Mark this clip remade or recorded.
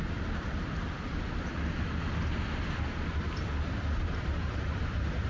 remade